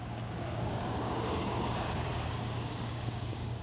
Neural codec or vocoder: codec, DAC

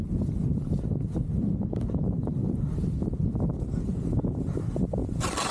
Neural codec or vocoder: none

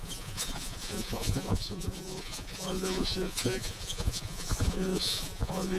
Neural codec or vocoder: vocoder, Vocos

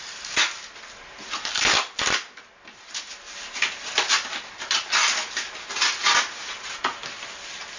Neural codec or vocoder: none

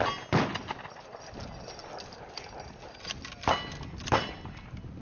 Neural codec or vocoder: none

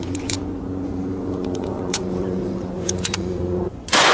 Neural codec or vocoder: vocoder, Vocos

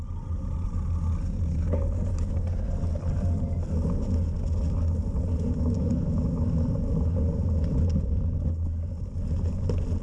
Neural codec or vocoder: none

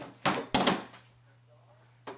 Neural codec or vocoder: none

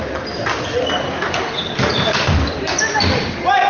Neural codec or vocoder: vocoder, BigVGAN v2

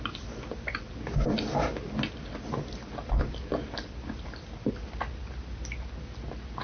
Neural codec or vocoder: none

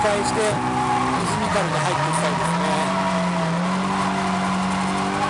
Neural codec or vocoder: none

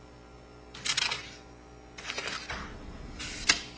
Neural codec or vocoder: none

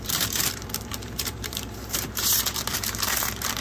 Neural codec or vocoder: vocoder, BigVGAN v2